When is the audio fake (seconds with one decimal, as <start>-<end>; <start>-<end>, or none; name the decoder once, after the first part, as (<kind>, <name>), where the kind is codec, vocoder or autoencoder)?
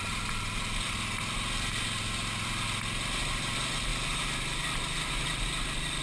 none